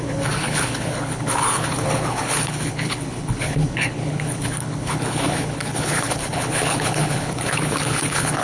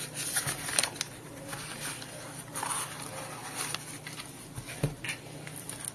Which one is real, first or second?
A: second